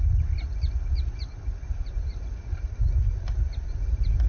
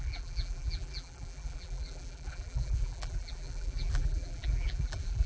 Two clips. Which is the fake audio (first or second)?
second